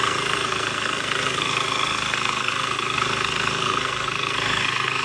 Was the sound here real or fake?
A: fake